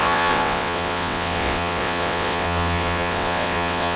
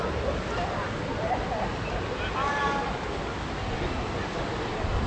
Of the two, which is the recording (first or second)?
second